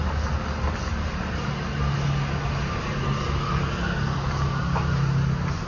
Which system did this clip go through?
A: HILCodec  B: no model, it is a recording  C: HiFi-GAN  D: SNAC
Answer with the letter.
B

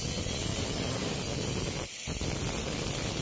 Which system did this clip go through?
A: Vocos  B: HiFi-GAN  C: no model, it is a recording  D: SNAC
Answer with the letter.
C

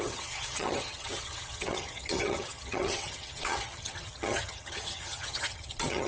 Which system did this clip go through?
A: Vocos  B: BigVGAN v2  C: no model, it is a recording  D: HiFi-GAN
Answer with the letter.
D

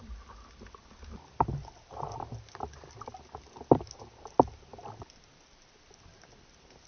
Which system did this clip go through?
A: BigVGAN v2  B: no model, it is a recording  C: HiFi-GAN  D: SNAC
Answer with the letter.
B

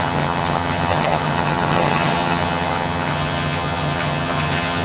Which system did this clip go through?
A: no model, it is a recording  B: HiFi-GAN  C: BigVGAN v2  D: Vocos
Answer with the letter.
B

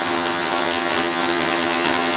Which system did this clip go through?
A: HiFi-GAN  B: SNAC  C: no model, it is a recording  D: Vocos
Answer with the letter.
A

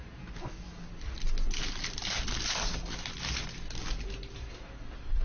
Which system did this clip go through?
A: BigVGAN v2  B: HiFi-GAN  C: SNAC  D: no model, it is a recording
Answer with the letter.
D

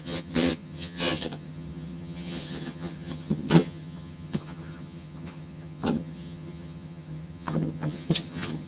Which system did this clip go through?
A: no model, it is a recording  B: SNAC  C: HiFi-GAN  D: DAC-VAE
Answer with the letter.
C